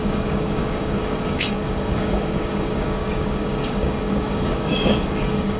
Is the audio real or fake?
fake